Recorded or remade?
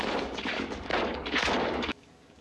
remade